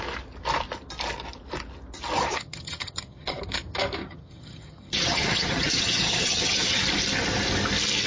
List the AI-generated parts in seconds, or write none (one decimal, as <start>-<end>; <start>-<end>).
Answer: 2.3-3.4; 4.0-6.8